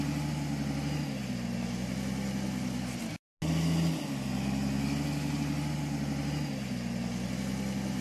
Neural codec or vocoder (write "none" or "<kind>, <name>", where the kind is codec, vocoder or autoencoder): none